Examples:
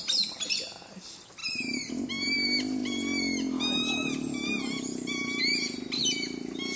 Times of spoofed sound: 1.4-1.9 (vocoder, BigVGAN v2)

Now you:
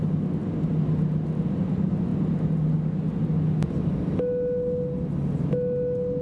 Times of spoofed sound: none

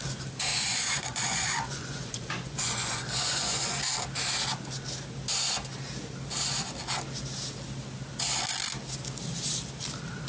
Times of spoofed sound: 0.5-3.8 (vocoder, Vocos)

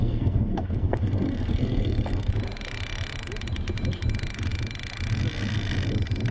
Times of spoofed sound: 0.0-2.3 (codec, SNAC)

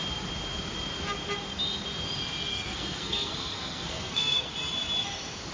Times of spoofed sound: 2.5-4.5 (codec, SNAC)